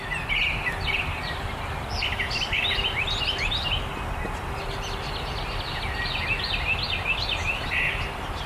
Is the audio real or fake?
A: real